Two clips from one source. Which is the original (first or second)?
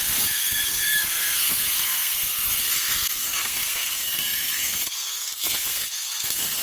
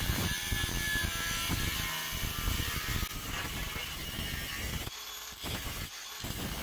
second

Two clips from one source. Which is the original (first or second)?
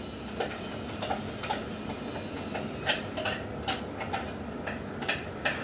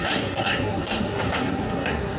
first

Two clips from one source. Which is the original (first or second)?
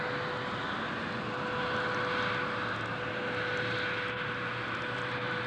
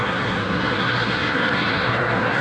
first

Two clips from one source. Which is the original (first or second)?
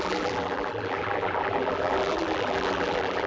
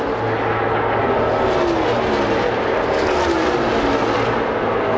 second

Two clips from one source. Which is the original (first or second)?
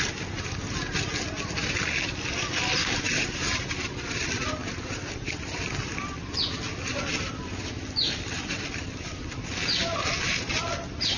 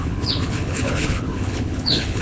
first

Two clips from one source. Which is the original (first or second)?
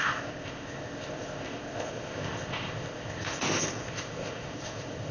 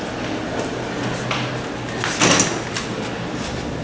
second